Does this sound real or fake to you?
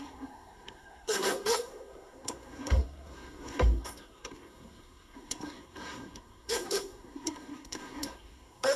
fake